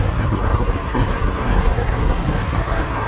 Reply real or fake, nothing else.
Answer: fake